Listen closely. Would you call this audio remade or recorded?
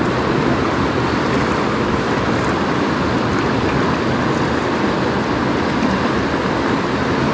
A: recorded